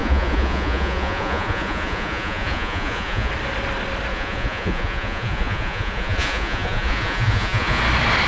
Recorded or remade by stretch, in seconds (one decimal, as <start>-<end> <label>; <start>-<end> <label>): 0.0-3.3 remade; 3.3-4.1 recorded; 4.1-7.8 remade; 7.8-8.3 recorded